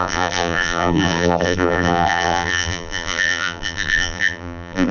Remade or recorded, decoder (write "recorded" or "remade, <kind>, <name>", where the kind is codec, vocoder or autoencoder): remade, vocoder, BigVGAN v2